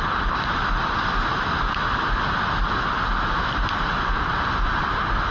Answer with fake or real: real